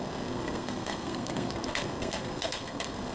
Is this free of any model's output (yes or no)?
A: no